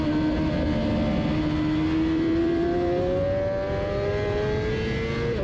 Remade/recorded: recorded